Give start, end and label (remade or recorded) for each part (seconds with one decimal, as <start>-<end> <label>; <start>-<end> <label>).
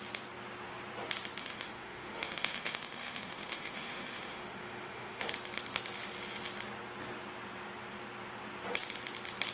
0.0-1.4 recorded; 1.4-5.3 remade; 5.3-9.5 recorded